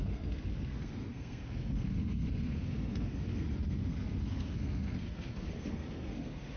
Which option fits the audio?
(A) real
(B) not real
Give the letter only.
B